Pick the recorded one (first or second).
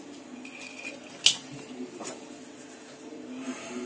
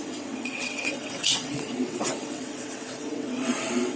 first